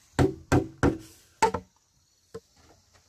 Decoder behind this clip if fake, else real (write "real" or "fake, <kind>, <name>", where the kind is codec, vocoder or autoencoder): real